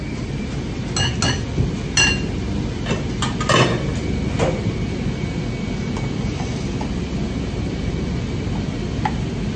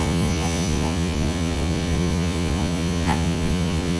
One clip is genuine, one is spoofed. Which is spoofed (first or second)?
second